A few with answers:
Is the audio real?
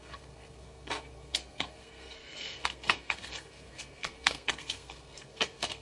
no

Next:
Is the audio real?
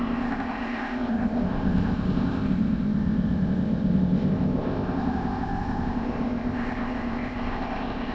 no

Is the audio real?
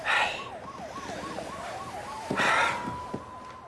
yes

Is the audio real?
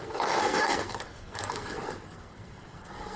no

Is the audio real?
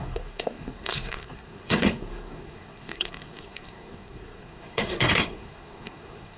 no